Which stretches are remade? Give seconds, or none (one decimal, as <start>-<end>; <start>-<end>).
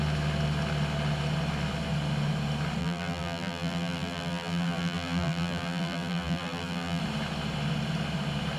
2.8-7.0